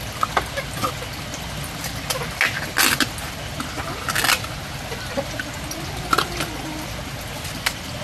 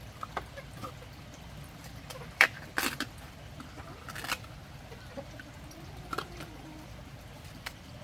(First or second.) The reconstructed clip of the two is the second